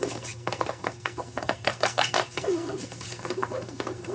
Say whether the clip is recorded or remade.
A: remade